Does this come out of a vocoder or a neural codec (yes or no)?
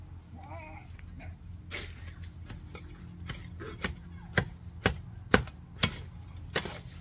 no